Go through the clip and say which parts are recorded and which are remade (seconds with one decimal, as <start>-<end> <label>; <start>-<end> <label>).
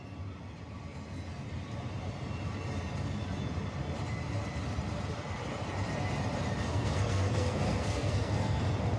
0.0-6.7 recorded; 6.7-8.6 remade; 8.6-9.0 recorded